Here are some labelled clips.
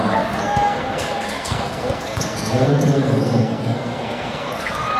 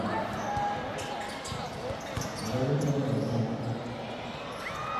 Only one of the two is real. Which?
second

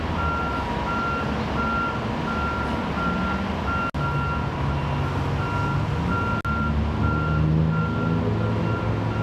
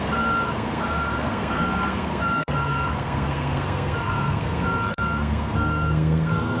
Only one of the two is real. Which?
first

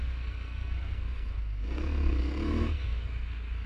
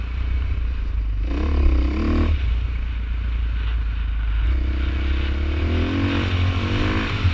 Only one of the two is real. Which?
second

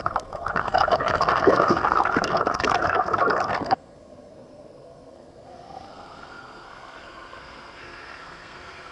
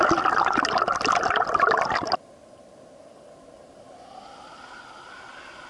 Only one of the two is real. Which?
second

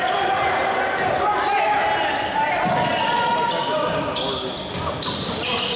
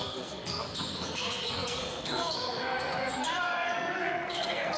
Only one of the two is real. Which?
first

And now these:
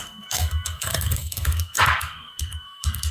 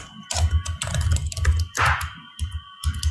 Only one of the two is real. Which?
second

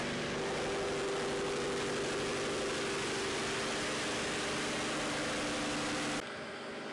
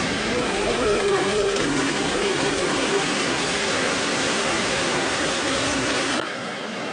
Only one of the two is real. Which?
first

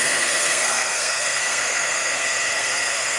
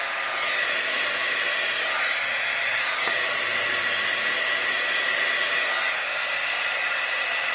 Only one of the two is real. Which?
second